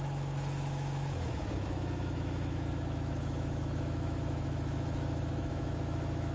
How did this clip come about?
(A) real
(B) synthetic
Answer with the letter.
B